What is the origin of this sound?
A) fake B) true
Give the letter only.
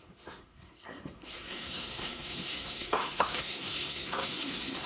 A